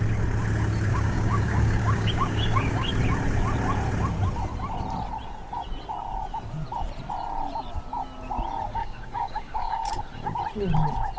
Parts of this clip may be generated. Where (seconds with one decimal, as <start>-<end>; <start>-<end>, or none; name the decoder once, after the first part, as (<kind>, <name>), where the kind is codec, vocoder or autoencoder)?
0.9-2.9 (codec, DAC); 8.8-10.0